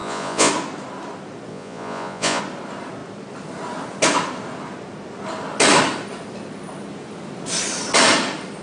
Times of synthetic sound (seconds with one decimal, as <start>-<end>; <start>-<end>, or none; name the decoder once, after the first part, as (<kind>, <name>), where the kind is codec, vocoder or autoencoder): 0.0-0.5 (vocoder, Vocos); 1.5-2.4